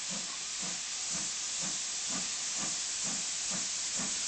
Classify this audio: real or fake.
real